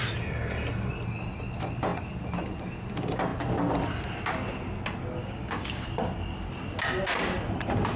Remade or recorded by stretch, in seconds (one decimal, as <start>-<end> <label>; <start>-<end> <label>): 0.0-5.2 recorded; 5.2-5.8 remade; 5.8-8.0 recorded